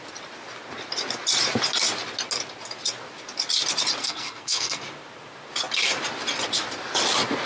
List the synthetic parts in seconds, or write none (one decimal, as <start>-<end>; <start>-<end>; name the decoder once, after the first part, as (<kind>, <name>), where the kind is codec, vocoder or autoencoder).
4.0-4.8 (codec, SNAC)

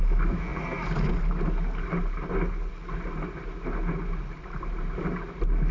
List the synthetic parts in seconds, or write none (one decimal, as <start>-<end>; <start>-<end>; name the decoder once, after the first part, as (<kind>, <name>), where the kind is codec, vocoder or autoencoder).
none

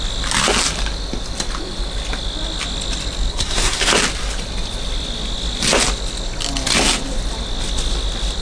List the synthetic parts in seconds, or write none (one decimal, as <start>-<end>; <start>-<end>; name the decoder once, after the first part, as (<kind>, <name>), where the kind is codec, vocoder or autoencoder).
3.3-3.9 (codec, SNAC)

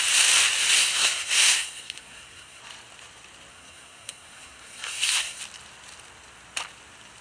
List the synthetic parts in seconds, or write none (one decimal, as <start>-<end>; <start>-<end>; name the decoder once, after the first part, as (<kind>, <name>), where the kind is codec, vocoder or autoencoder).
0.8-2.6 (codec, SNAC); 3.5-5.4

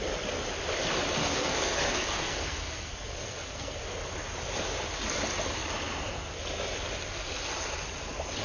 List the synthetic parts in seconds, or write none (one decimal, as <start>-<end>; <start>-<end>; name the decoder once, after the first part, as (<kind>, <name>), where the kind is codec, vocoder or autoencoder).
1.2-3.8 (codec, SNAC)

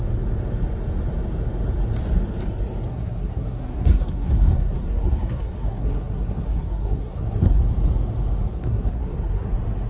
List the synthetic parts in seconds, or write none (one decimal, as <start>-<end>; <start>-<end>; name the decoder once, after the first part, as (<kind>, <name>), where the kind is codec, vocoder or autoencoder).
2.9-7.6 (codec, SNAC); 8.5-9.5

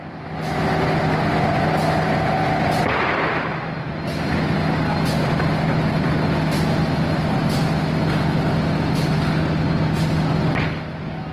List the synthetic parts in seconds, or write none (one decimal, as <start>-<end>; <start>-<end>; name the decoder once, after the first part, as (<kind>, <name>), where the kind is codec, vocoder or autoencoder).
none

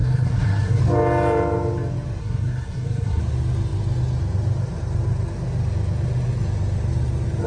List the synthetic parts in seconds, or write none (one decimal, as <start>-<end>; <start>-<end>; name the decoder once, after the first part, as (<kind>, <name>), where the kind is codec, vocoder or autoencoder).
0.0-0.8 (codec, SNAC); 2.2-3.2